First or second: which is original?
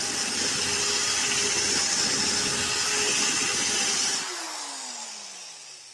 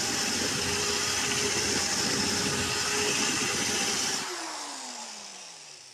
first